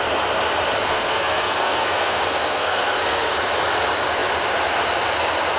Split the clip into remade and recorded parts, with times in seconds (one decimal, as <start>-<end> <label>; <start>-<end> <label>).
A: 0.0-0.8 recorded; 0.8-3.3 remade; 3.3-5.6 recorded